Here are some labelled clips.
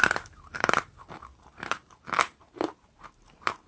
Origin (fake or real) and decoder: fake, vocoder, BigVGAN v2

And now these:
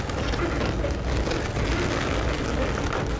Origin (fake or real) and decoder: real